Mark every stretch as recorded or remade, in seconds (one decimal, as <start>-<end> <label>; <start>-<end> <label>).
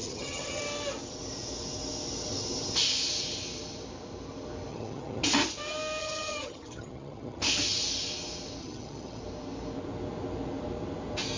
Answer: 0.0-0.6 remade; 0.6-4.7 recorded; 4.7-5.2 remade; 5.2-6.0 recorded; 6.0-7.4 remade; 7.4-8.6 recorded; 8.6-9.2 remade; 9.2-11.4 recorded